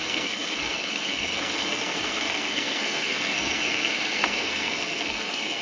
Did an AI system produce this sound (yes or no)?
yes